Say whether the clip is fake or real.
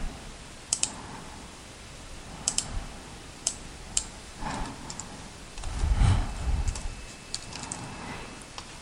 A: fake